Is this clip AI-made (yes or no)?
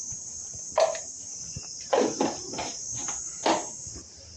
no